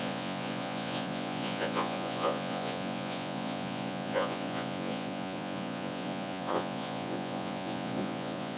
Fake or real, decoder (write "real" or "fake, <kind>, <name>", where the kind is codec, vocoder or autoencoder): fake, vocoder, Vocos